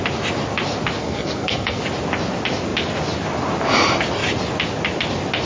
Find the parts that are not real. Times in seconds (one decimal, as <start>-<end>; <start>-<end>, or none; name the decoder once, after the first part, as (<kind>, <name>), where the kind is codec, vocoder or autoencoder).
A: 1.0-1.8 (codec, SNAC)